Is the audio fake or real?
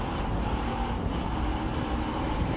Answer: fake